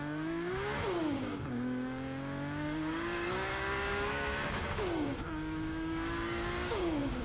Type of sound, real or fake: fake